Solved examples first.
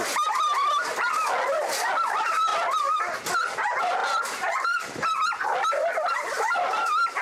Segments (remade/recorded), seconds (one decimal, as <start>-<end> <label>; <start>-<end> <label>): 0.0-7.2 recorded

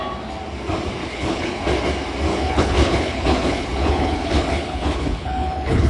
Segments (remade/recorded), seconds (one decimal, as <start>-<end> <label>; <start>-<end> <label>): 0.0-1.0 recorded; 1.0-1.6 remade; 1.6-2.3 recorded; 2.3-5.9 remade

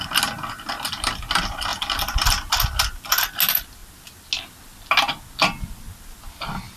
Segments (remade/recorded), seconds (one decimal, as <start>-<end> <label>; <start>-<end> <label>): 0.0-6.8 recorded

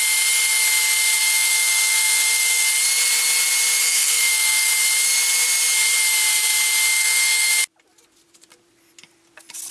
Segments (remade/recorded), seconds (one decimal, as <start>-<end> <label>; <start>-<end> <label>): 0.0-1.2 recorded; 1.2-2.7 remade; 2.7-3.8 recorded; 3.8-4.7 remade; 4.7-6.9 recorded; 6.9-7.5 remade; 7.5-9.7 recorded

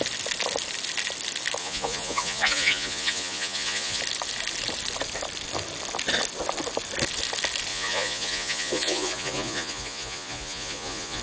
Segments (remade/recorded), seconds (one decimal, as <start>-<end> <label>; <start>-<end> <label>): 0.0-1.6 recorded; 1.6-4.0 remade; 4.0-7.7 recorded; 7.7-11.2 remade

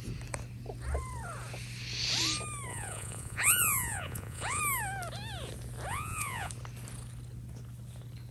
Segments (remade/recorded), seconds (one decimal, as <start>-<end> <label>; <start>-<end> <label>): 0.0-2.7 recorded; 2.7-4.6 remade; 4.6-5.9 recorded; 5.9-6.5 remade; 6.5-8.3 recorded